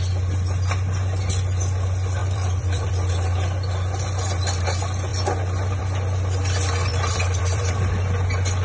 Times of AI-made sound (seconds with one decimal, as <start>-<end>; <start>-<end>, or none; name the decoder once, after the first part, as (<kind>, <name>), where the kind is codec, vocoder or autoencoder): 2.2-3.1 (vocoder, BigVGAN v2); 6.9-7.8